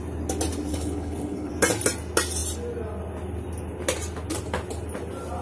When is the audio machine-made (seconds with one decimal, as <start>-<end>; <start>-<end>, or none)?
0.7-1.5

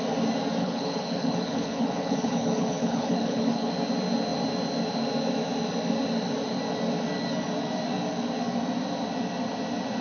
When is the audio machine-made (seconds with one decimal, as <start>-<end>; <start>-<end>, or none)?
0.6-3.7

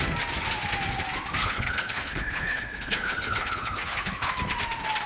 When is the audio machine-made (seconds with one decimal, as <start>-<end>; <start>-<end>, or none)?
1.4-4.3

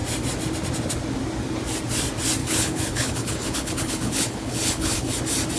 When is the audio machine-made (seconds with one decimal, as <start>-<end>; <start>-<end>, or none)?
2.4-5.1

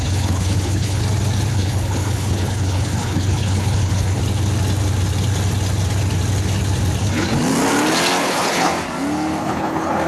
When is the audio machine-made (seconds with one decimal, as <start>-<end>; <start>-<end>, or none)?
0.0-1.0; 1.5-4.2; 7.0-7.4; 8.2-8.7; 9.4-10.1

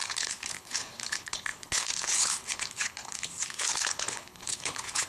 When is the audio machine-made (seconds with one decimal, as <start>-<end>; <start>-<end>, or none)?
0.0-5.1

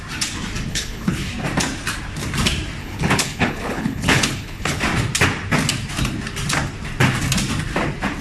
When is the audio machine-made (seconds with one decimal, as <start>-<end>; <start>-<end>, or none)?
0.7-1.3; 2.8-4.8